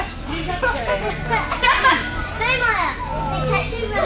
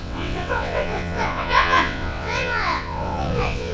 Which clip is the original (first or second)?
first